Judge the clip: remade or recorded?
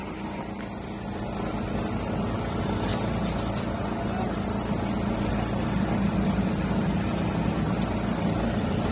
recorded